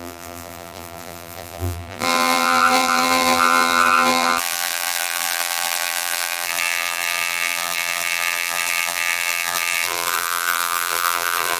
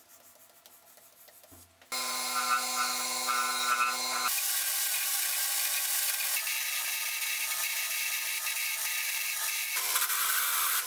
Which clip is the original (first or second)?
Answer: second